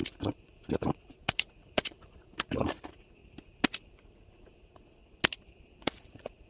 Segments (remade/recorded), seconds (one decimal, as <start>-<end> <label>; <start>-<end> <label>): 0.0-3.2 remade; 3.2-3.9 recorded; 3.9-5.0 remade; 5.0-5.8 recorded; 5.8-6.5 remade